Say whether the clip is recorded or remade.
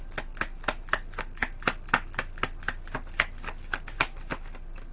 recorded